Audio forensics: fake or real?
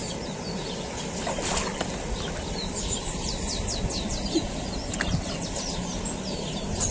real